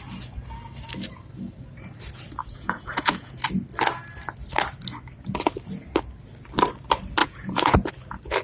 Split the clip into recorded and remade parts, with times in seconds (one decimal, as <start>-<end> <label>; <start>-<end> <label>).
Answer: 0.0-2.4 recorded; 2.4-3.4 remade; 3.4-7.2 recorded; 7.2-7.9 remade; 7.9-8.4 recorded

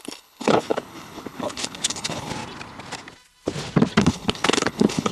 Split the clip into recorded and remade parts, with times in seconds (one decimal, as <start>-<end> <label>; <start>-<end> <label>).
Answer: 0.0-2.3 remade; 2.3-4.0 recorded; 4.0-5.1 remade